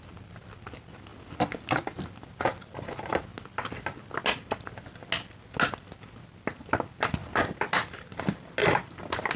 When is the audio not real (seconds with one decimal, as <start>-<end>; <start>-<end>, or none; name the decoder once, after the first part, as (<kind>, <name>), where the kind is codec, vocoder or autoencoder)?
none